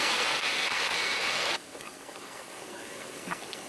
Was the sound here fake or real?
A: fake